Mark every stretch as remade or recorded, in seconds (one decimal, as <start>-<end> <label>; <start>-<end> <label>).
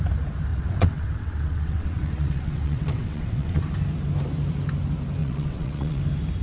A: 0.0-0.5 recorded; 0.5-3.6 remade; 3.6-5.2 recorded; 5.2-6.0 remade; 6.0-6.4 recorded